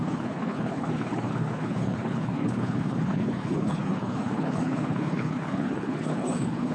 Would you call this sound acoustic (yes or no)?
no